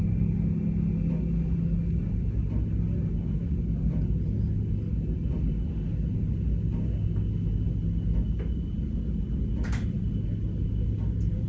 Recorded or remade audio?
recorded